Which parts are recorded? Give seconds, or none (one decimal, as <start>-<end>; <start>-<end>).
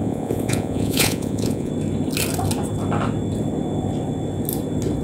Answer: 1.7-5.0